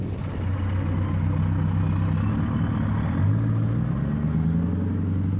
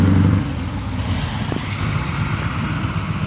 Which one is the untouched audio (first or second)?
first